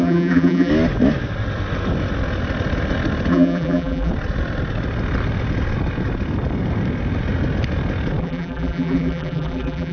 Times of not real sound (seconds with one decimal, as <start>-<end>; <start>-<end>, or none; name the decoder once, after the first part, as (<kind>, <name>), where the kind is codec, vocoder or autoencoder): 0.0-0.7 (vocoder, BigVGAN v2); 3.3-4.1; 8.2-9.9